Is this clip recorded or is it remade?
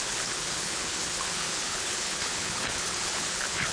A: remade